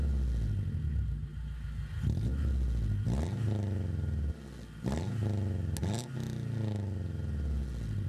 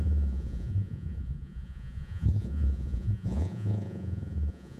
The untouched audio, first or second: first